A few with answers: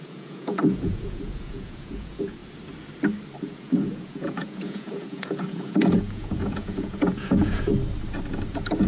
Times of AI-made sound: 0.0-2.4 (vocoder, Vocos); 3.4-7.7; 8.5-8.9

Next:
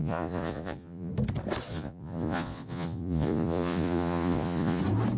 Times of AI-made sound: 0.0-1.1 (vocoder, Vocos); 1.7-4.8

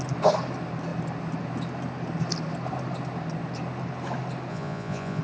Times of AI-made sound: 4.5-5.2 (vocoder, Vocos)

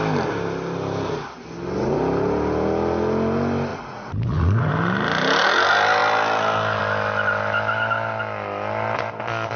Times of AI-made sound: 3.7-4.7 (vocoder, Vocos)

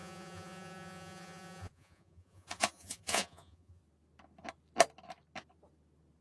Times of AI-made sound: 0.0-3.8 (vocoder, Vocos)

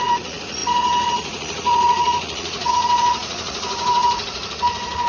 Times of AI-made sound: 0.0-5.1 (vocoder, Vocos)